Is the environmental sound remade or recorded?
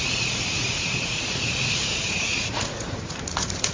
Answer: remade